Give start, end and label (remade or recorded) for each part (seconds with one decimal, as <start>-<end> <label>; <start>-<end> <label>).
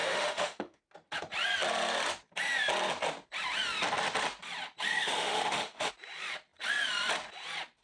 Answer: 0.0-0.8 remade; 0.8-4.9 recorded; 4.9-5.9 remade; 5.9-7.8 recorded